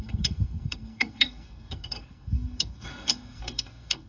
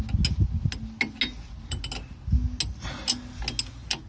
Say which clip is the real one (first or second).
second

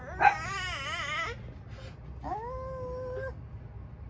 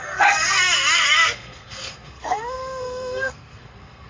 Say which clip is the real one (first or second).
first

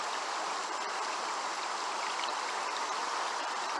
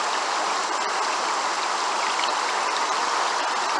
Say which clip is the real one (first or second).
second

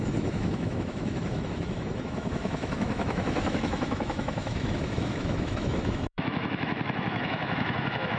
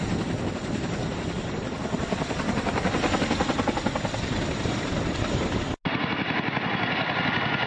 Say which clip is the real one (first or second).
second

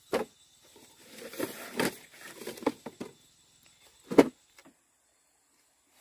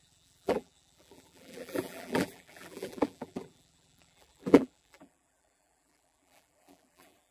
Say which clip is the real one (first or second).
first